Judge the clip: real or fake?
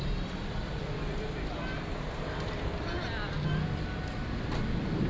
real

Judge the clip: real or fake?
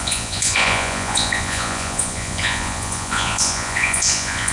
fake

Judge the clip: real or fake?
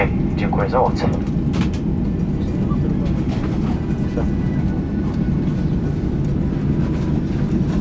real